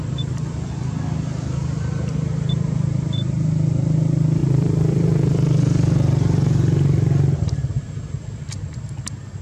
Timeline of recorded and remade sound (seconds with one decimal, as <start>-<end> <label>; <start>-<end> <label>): 0.0-4.4 recorded; 4.4-8.1 remade; 8.1-9.4 recorded